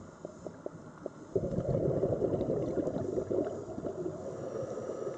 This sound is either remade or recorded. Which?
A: recorded